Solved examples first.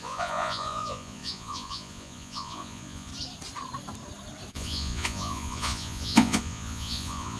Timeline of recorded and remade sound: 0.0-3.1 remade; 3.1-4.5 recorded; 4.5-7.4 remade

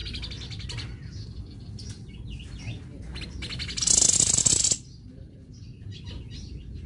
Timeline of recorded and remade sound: 0.0-6.9 recorded

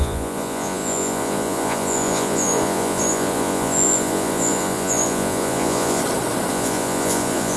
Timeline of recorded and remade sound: 0.0-6.0 remade; 6.0-6.5 recorded; 6.5-7.6 remade

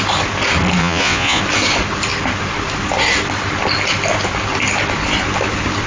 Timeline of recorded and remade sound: 0.0-0.8 recorded; 0.8-1.4 remade; 1.4-5.9 recorded

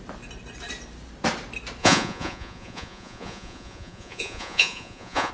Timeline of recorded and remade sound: 0.0-1.8 recorded; 1.8-5.3 remade

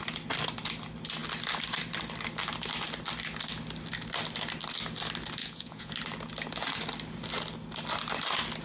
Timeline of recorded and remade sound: 0.0-5.4 recorded; 5.4-5.9 remade; 5.9-8.6 recorded

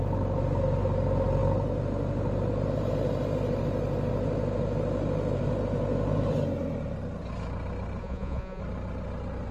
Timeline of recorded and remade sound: 0.0-8.0 recorded; 8.0-8.6 remade; 8.6-9.5 recorded

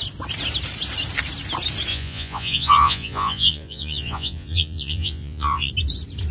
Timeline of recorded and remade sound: 0.0-1.9 recorded; 1.9-5.7 remade; 5.7-6.3 recorded